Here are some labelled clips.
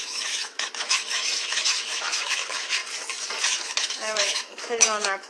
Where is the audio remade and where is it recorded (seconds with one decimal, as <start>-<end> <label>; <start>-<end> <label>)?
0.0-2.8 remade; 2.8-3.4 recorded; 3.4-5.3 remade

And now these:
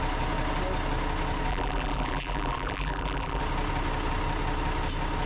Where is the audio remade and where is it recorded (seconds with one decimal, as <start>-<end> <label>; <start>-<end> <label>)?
0.0-1.5 recorded; 1.5-3.4 remade; 3.4-5.3 recorded

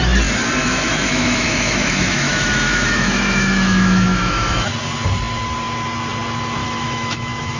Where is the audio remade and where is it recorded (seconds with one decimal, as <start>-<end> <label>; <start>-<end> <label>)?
0.0-0.6 recorded; 0.6-4.7 remade; 4.7-6.6 recorded; 6.6-7.6 remade

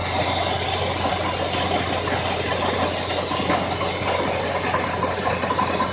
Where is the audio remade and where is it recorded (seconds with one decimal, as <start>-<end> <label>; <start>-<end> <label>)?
0.0-5.9 recorded

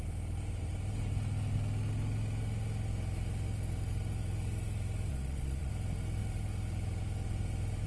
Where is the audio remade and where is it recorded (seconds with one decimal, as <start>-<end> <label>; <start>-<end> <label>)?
0.0-5.1 recorded; 5.1-5.7 remade; 5.7-7.9 recorded

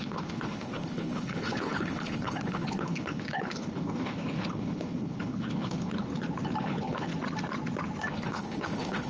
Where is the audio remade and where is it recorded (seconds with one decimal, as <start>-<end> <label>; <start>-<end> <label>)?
0.0-6.1 remade; 6.1-6.6 recorded; 6.6-7.1 remade; 7.1-8.1 recorded; 8.1-9.1 remade